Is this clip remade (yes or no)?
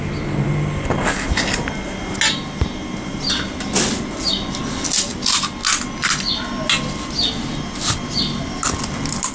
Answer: no